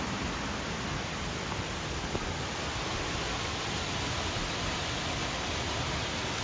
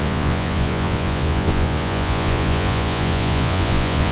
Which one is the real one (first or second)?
first